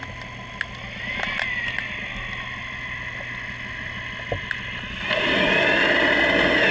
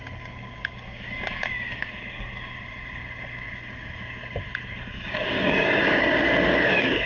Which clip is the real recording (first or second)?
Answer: first